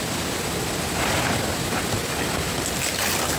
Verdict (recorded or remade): recorded